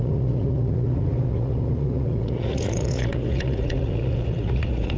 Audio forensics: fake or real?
fake